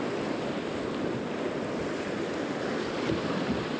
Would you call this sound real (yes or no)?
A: yes